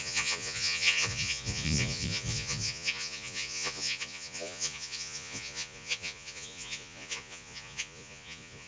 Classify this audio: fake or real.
fake